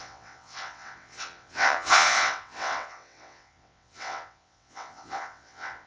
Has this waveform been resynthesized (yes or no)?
yes